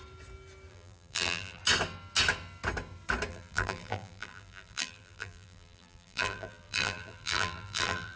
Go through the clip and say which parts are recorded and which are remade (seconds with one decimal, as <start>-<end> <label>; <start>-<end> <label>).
0.0-0.7 recorded; 0.7-1.6 remade; 1.6-3.3 recorded; 3.3-8.2 remade

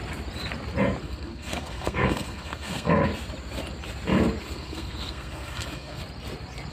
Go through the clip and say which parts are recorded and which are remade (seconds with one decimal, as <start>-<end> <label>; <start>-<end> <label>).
0.0-1.0 recorded; 1.0-3.1 remade; 3.1-4.4 recorded; 4.4-6.0 remade; 6.0-6.7 recorded

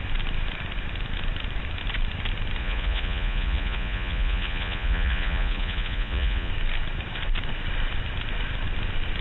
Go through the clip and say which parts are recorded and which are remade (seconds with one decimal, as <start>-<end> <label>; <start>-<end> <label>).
0.0-2.6 recorded; 2.6-6.5 remade; 6.5-9.2 recorded

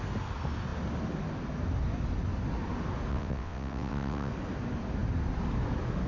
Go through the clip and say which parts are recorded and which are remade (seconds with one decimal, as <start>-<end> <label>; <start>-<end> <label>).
0.0-3.1 recorded; 3.1-4.3 remade; 4.3-6.1 recorded

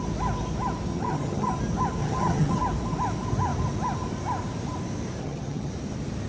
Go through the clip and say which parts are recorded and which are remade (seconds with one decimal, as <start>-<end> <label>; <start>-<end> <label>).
0.0-0.9 recorded; 0.9-1.6 remade; 1.6-2.0 recorded; 2.0-2.6 remade; 2.6-5.2 recorded; 5.2-5.7 remade; 5.7-6.3 recorded

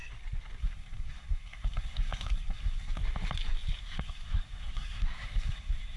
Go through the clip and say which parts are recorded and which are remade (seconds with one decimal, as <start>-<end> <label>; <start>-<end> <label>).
0.0-0.6 recorded; 0.6-3.0 remade; 3.0-3.8 recorded; 3.8-6.0 remade